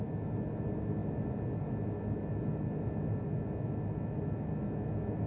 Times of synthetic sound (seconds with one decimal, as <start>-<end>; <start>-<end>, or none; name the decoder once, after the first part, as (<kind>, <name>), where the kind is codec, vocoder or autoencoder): none